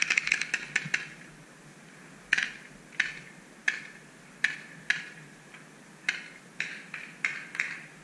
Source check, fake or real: real